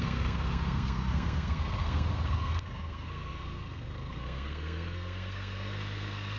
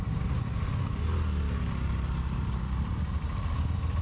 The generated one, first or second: first